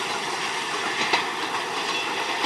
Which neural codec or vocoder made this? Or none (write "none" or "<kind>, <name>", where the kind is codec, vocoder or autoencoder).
none